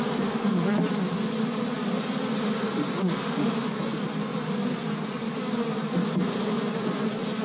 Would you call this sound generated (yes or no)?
no